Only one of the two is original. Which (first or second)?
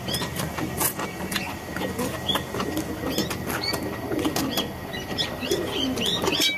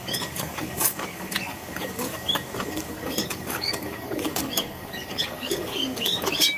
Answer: first